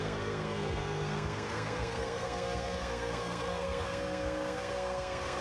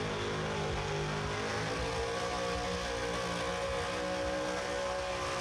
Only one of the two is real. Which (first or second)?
second